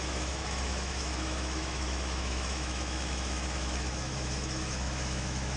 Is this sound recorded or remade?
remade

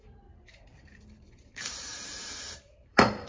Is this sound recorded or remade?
remade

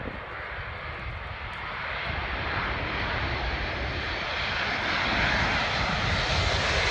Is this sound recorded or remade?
recorded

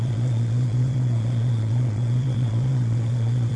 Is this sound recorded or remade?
remade